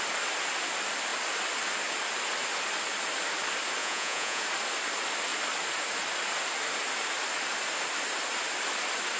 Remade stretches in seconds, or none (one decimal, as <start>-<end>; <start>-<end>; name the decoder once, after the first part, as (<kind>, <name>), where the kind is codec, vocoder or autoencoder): 3.8-4.4 (vocoder, Vocos)